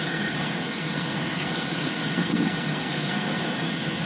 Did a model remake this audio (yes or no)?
yes